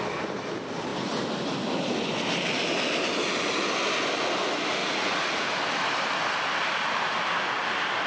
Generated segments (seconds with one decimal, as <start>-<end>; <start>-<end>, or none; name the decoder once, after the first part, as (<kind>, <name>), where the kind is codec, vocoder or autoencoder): 4.8-5.5 (vocoder, Vocos)